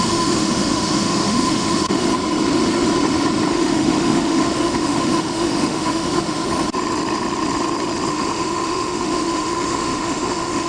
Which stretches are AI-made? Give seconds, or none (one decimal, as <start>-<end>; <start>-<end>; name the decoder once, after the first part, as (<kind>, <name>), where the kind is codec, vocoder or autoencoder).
0.0-2.1 (autoencoder, DAC-VAE); 3.5-6.4; 8.1-10.7